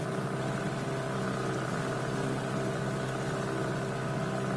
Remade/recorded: recorded